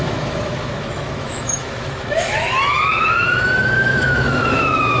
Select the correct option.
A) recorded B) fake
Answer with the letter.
B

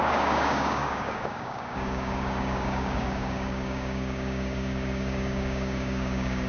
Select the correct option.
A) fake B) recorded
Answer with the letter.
A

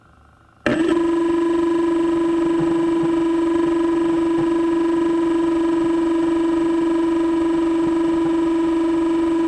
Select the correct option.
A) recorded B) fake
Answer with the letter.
A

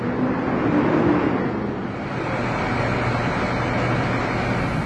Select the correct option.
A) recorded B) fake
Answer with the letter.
A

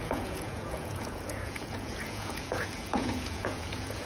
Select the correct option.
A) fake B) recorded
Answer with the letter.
A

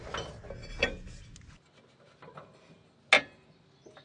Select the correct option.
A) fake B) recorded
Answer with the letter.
B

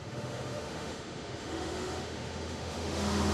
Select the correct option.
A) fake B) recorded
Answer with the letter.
A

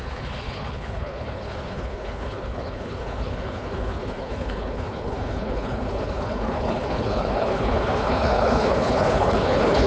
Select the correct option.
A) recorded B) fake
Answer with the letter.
B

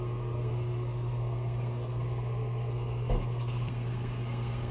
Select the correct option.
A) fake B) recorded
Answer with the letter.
A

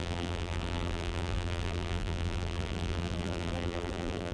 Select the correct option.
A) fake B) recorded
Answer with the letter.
A